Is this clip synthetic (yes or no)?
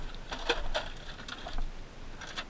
no